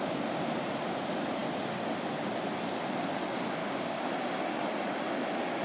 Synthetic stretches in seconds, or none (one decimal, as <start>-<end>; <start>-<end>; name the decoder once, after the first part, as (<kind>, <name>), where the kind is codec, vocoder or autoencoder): 3.6-4.1 (codec, DAC)

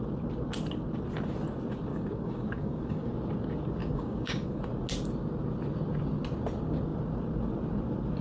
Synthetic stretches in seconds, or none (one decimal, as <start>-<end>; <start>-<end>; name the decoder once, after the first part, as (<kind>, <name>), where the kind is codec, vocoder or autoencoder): 1.9-3.1 (codec, DAC); 3.8-4.6

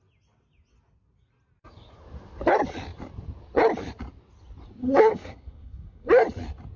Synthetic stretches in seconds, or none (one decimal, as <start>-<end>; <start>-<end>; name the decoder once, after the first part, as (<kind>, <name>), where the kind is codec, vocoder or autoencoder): 4.8-6.1 (codec, SNAC)